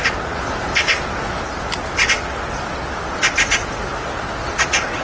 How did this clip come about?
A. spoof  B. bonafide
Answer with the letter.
B